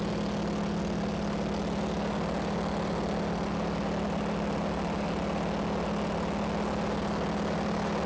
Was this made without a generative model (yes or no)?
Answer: yes